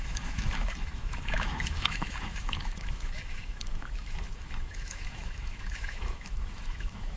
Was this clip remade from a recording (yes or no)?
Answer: yes